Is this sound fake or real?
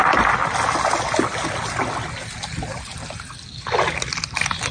real